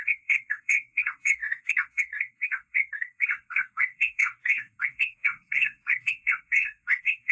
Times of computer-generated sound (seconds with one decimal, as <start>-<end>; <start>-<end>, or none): 0.0-7.3